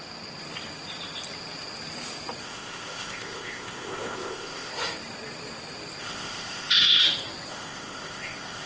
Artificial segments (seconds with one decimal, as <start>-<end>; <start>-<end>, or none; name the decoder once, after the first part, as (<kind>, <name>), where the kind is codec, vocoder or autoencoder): 2.4-4.7 (codec, ZipCodec); 6.0-7.0; 7.5-8.7

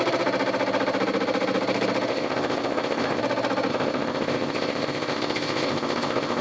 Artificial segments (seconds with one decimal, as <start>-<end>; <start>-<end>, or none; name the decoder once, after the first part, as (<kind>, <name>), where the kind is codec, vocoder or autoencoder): 2.1-3.2 (codec, ZipCodec); 3.7-6.4